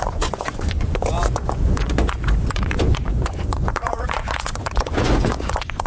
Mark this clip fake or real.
fake